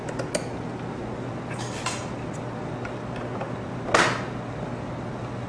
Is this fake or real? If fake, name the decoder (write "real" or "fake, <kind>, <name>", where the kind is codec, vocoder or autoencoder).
real